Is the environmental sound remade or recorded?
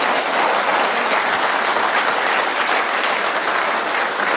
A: recorded